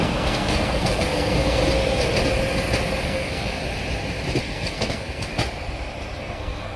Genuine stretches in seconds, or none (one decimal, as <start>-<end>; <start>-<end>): 1.6-3.0; 3.6-4.4; 5.3-6.2